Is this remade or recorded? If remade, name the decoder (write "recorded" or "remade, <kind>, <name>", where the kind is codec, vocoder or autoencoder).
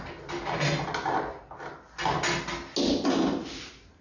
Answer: recorded